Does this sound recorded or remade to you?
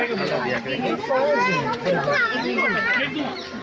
recorded